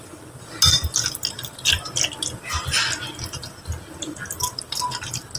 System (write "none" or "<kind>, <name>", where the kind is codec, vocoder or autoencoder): none